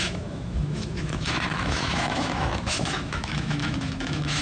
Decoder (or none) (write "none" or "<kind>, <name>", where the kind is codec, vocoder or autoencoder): autoencoder, DAC-VAE